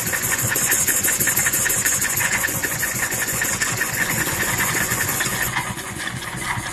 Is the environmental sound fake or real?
fake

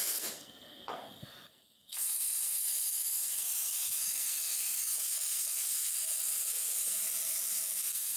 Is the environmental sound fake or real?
fake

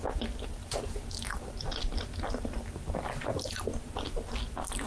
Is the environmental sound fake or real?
real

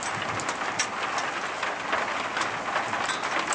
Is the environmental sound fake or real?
real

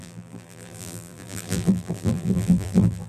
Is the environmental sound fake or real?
fake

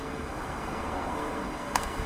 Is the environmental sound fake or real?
fake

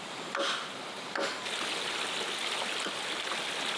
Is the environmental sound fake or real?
real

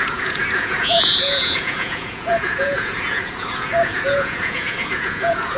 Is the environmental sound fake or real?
fake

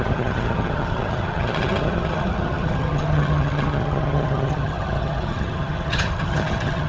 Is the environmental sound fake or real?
fake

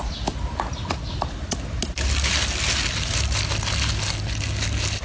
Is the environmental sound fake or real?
real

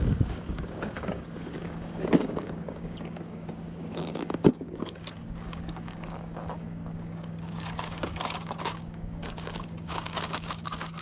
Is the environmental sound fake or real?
fake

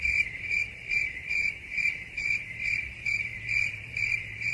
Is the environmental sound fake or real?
fake